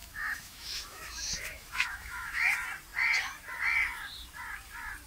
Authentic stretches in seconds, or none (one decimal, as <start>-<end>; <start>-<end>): 2.5-5.1